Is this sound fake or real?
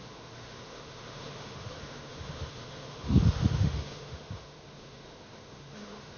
fake